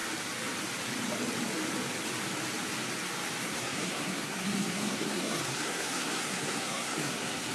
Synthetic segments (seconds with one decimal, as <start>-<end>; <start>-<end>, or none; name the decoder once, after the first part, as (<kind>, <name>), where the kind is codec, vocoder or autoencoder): 3.4-7.5 (codec, SNAC)